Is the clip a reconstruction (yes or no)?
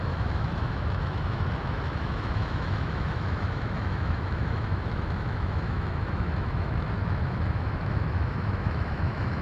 yes